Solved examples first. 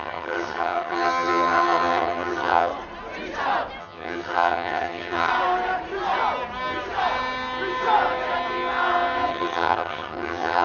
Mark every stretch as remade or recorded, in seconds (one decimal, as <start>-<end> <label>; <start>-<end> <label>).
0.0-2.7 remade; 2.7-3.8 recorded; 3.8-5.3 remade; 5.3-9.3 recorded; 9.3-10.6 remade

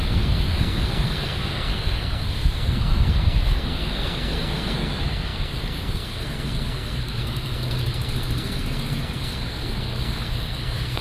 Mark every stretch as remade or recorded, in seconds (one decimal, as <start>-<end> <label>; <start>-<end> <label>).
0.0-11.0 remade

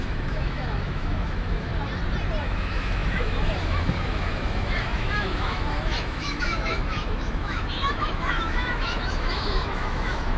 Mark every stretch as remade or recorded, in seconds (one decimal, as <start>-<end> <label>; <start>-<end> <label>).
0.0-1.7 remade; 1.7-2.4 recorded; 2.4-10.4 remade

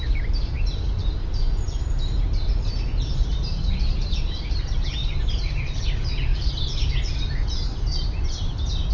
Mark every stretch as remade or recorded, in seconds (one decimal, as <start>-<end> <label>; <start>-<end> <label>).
0.0-1.0 remade; 1.0-3.3 recorded; 3.3-6.3 remade; 6.3-8.9 recorded

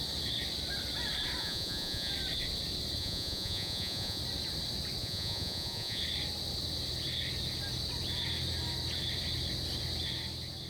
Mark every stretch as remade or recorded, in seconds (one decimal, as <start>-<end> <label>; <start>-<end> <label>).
0.0-1.4 recorded; 1.4-2.1 remade; 2.1-3.0 recorded; 3.0-4.2 remade; 4.2-5.0 recorded; 5.0-6.0 remade; 6.0-10.7 recorded

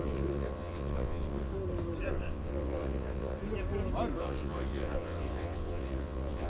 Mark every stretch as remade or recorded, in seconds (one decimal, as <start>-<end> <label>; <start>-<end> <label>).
0.0-1.5 remade; 1.5-2.1 recorded; 2.1-3.4 remade; 3.4-4.2 recorded; 4.2-6.5 remade

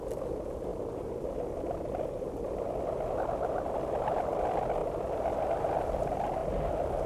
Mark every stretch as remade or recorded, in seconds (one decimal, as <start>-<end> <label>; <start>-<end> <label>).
0.0-7.1 recorded

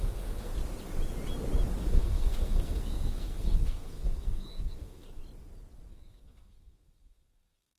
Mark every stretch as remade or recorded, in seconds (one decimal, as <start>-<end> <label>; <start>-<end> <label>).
0.0-0.5 remade; 0.5-1.8 recorded; 1.8-5.2 remade; 5.2-5.9 recorded; 5.9-7.8 remade